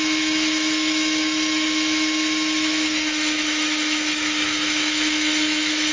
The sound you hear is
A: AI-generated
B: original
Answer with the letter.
A